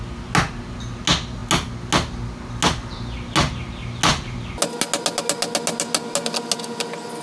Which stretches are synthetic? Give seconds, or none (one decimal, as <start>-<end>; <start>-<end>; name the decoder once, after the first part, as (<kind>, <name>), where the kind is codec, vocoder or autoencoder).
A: none